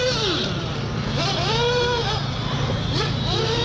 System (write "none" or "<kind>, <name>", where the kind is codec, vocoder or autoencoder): none